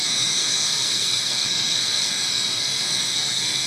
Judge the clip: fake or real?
fake